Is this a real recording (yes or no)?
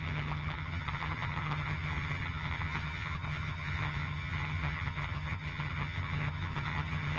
no